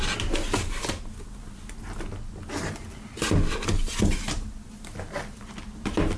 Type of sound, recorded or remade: recorded